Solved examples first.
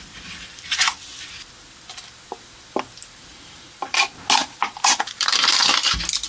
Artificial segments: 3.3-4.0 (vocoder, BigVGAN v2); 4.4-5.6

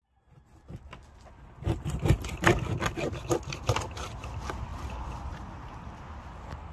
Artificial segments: 1.0-3.3 (vocoder, BigVGAN v2)